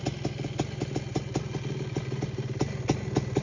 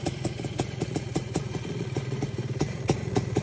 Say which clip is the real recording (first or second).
first